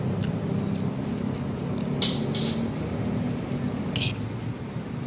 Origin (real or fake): real